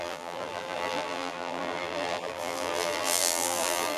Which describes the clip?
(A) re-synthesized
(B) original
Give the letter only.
A